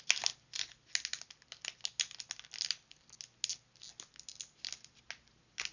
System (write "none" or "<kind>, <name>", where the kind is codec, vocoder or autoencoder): none